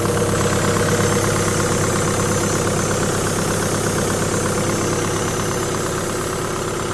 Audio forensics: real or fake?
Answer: real